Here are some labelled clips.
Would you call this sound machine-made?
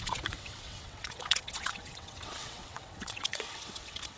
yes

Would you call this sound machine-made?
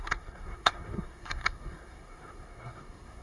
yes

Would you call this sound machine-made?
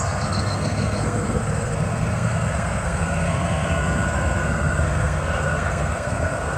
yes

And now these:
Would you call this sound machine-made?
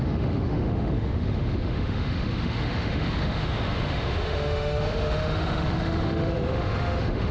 yes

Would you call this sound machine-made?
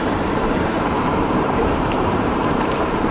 yes